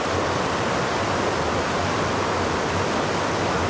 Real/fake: real